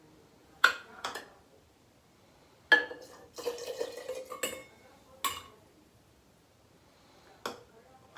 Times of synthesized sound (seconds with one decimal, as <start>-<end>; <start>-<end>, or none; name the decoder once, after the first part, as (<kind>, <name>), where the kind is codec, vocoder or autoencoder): 0.4-1.2 (vocoder, Vocos)